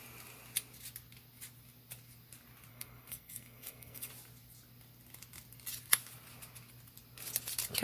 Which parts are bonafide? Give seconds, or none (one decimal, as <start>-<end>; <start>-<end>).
0.0-2.7; 4.1-7.8